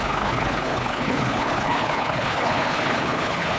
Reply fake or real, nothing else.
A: fake